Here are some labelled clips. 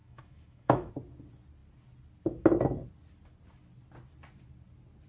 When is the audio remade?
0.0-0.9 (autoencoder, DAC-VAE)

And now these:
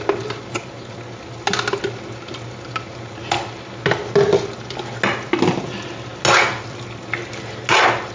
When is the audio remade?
none

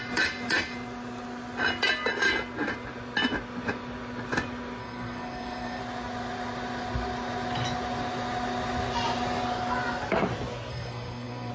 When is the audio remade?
4.8-5.8 (codec, SNAC); 10.7-11.5

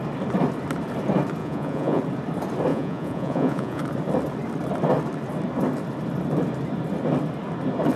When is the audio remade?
1.4-2.0 (vocoder, Vocos); 2.7-3.8

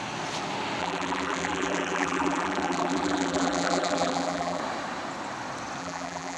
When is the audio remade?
0.8-4.6 (vocoder, BigVGAN v2); 5.8-6.4

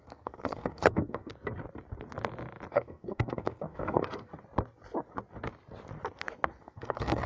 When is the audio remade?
0.0-1.3 (codec, SNAC); 2.7-4.3; 6.6-7.3

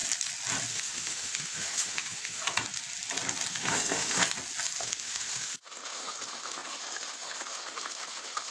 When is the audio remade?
0.7-2.4 (autoencoder, DAC-VAE); 3.5-4.2; 4.8-8.5